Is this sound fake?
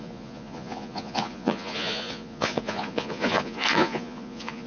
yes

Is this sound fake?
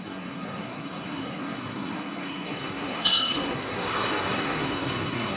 yes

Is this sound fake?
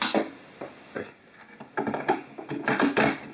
no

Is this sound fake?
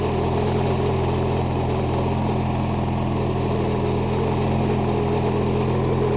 no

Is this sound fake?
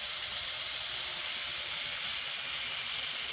no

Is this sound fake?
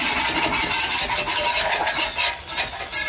no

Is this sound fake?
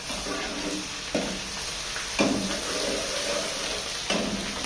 no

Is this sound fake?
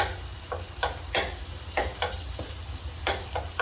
no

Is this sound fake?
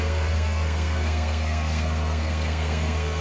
yes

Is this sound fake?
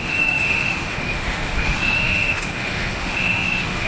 yes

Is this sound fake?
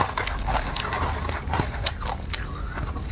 no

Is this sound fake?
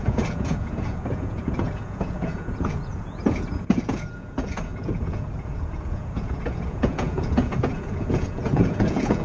yes